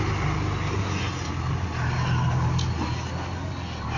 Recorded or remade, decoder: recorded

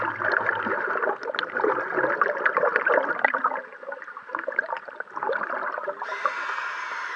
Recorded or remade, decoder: recorded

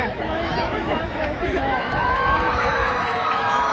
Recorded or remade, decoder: remade, autoencoder, DAC-VAE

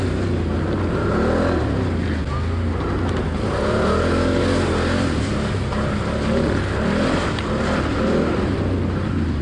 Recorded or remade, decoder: recorded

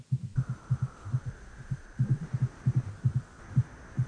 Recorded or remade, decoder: recorded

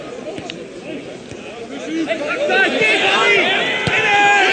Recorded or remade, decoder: recorded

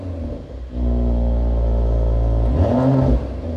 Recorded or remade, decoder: recorded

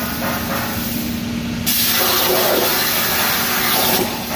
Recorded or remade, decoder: recorded